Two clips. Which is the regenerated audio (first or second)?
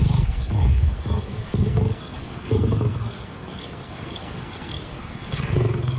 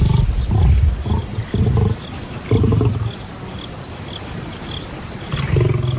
first